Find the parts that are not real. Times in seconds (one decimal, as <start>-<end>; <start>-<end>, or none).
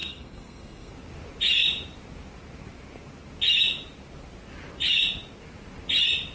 0.0-0.9